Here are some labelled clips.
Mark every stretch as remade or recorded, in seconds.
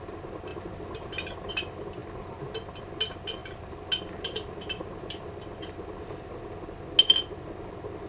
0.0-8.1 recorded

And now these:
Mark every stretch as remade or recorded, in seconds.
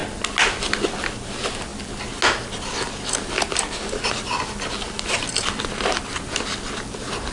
0.0-7.3 recorded